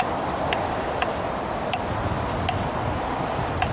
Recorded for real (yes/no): yes